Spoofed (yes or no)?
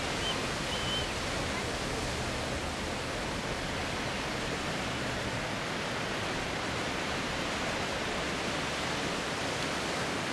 no